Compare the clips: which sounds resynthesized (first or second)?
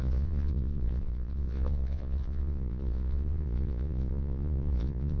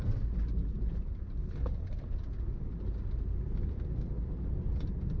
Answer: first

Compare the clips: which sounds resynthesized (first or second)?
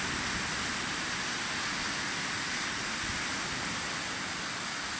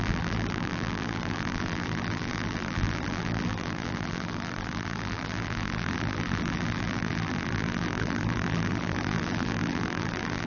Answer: second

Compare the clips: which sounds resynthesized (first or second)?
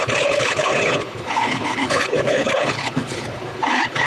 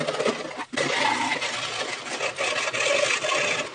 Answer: first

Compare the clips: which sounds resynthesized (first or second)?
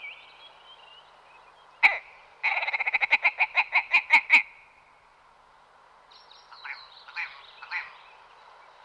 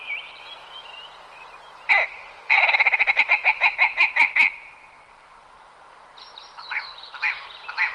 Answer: second